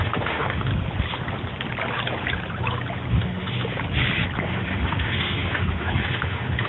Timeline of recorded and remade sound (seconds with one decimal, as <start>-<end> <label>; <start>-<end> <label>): 0.0-0.7 remade; 0.7-3.1 recorded; 3.1-3.6 remade; 3.6-4.4 recorded; 4.4-6.7 remade